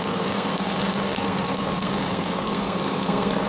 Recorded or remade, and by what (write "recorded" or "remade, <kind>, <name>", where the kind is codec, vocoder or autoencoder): remade, codec, SNAC